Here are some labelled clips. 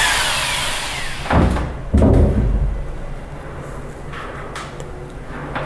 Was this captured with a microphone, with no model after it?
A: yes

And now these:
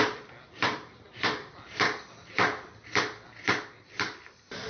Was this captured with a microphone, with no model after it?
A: yes